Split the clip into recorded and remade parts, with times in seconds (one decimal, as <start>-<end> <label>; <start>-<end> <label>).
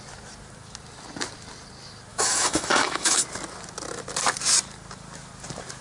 0.0-2.1 recorded; 2.1-3.2 remade; 3.2-5.8 recorded